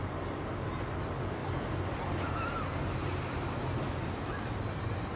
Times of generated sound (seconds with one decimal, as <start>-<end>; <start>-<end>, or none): 3.0-5.2